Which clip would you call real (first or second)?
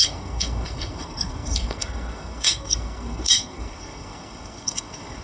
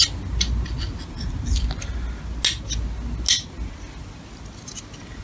second